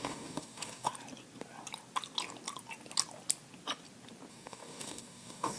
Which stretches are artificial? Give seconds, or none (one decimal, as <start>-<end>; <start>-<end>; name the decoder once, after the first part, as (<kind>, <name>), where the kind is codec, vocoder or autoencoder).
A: 0.0-0.9 (codec, DAC); 4.3-5.6